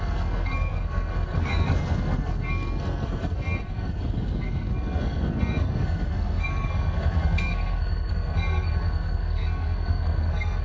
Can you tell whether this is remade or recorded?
remade